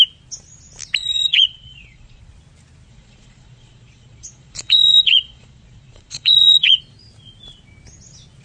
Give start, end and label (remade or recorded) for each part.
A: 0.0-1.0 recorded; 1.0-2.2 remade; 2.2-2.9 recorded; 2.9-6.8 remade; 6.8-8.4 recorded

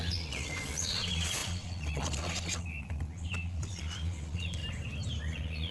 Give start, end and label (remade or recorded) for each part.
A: 0.0-4.6 remade; 4.6-5.2 recorded; 5.2-5.7 remade

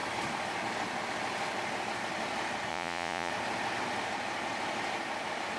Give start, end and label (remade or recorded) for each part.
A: 0.0-2.7 recorded; 2.7-3.3 remade; 3.3-5.6 recorded

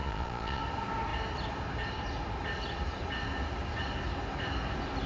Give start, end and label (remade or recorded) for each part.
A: 0.0-0.6 remade; 0.6-5.1 recorded

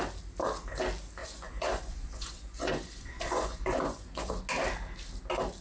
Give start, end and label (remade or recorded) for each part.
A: 0.0-1.2 recorded; 1.2-4.3 remade; 4.3-5.6 recorded